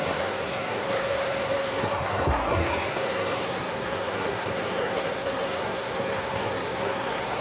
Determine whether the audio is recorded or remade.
remade